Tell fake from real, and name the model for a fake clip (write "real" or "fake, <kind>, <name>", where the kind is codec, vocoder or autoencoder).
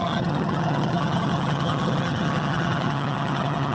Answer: fake, vocoder, HiFi-GAN